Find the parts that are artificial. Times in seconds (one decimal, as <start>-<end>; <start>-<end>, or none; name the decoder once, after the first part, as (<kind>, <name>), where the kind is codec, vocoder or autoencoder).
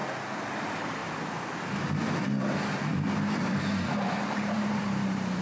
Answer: 0.6-1.0 (vocoder, BigVGAN v2); 4.2-5.4